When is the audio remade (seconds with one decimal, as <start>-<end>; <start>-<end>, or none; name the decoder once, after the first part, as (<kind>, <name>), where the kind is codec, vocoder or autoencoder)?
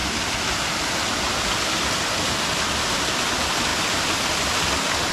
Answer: none